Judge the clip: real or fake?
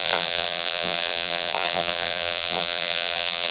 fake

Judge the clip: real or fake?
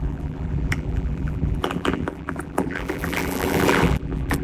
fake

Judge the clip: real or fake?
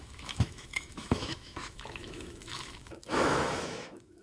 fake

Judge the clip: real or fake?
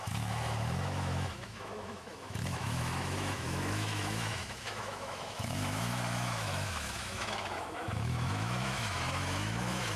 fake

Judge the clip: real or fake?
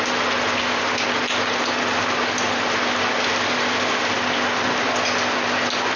real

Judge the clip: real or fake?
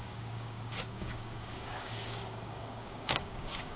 fake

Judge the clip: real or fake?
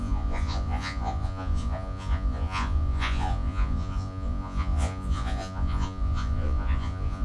fake